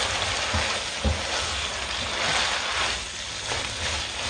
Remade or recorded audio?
recorded